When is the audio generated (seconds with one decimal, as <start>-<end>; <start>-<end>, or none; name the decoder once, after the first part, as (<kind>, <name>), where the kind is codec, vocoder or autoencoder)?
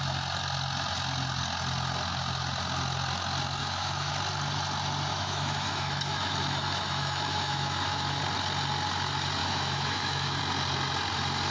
3.6-4.1 (autoencoder, DAC-VAE); 5.1-8.2; 9.4-10.4